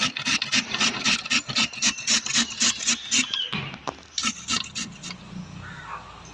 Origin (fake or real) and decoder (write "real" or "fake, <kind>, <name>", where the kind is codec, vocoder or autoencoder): real